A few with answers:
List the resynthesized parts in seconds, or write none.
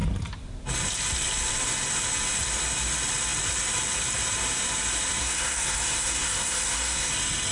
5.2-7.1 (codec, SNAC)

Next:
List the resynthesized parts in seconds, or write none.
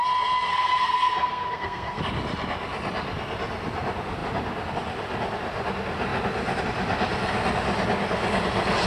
0.5-2.0 (codec, SNAC)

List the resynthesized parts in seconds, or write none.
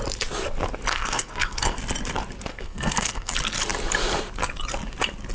0.9-1.8 (codec, SNAC); 2.5-3.3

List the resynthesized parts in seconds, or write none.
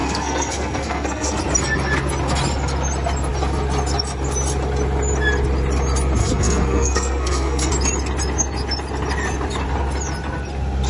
0.0-1.4 (codec, SNAC); 6.2-7.7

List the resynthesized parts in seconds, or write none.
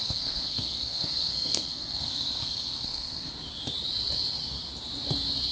0.0-3.3 (codec, SNAC)